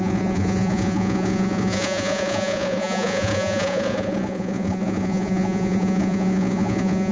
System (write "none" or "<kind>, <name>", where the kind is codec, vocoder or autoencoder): vocoder, Vocos